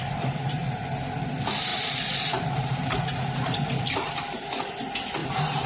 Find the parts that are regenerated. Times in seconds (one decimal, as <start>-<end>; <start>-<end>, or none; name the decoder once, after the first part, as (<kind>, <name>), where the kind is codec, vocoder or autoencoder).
1.7-3.6 (vocoder, BigVGAN v2); 5.2-5.7